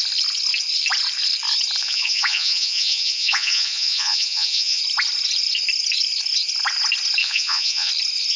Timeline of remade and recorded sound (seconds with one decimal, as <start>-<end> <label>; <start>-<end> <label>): 0.0-1.8 recorded; 1.8-4.8 remade; 4.8-7.2 recorded; 7.2-7.9 remade; 7.9-8.4 recorded